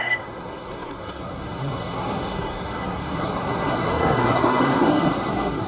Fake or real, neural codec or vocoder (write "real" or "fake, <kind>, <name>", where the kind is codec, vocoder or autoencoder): fake, codec, SNAC